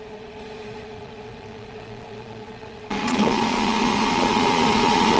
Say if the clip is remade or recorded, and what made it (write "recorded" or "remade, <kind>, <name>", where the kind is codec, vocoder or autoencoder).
remade, vocoder, Vocos